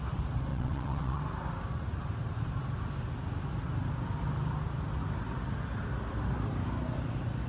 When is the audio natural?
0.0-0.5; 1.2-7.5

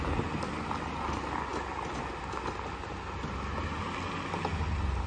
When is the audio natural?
0.0-5.1